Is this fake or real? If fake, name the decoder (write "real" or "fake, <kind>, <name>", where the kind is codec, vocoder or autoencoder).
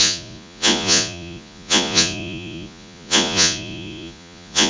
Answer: fake, vocoder, Vocos